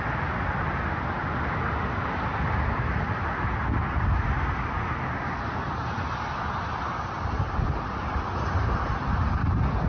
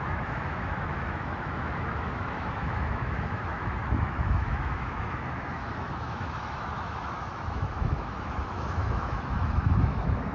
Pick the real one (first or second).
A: first